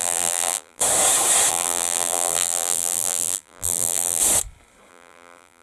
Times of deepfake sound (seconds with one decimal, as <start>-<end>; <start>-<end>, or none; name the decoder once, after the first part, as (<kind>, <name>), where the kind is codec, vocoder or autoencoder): 0.0-0.8 (vocoder, BigVGAN v2); 1.5-4.2; 4.9-5.6